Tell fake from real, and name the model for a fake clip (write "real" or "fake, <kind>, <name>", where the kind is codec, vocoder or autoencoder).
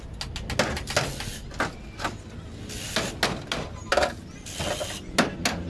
real